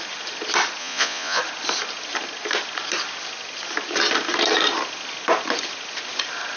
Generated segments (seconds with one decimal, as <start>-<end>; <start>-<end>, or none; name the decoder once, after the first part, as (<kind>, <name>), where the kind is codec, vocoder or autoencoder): 0.8-1.4 (vocoder, Vocos)